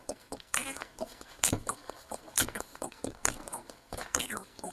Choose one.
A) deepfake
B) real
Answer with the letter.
A